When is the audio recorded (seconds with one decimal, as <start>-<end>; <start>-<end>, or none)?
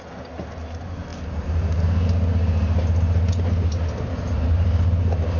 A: 0.0-5.4